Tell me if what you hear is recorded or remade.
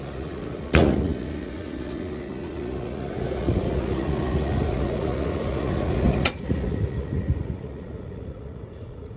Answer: remade